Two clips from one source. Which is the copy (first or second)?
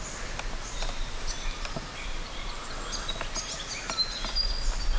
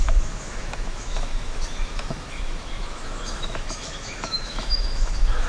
second